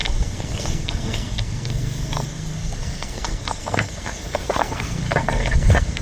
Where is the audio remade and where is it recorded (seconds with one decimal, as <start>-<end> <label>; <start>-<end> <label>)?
0.0-6.0 remade